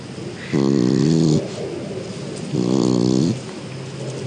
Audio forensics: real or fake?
real